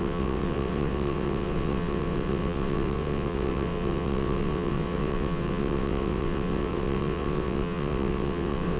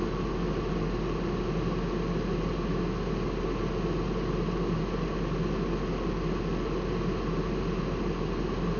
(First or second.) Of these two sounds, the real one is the second